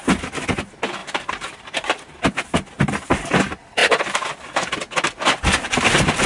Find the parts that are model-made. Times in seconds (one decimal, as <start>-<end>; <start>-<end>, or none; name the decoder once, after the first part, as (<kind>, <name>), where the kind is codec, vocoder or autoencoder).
1.0-1.8 (vocoder, BigVGAN v2)